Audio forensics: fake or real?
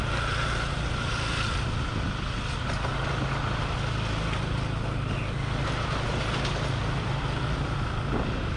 real